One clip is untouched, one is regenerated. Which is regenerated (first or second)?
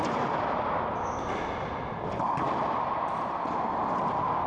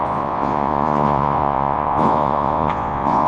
second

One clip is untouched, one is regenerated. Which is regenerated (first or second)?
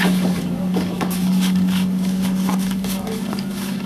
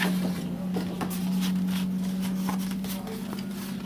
first